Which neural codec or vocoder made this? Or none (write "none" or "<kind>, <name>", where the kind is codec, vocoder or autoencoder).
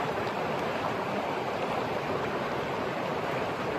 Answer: none